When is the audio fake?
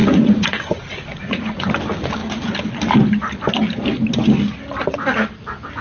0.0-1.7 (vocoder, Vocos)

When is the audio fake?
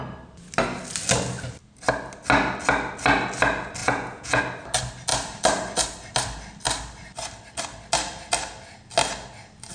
3.8-4.4 (vocoder, Vocos)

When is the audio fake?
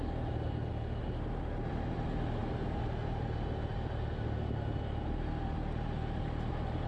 none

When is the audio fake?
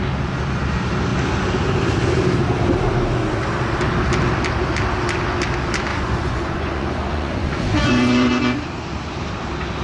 5.9-8.3 (vocoder, Vocos)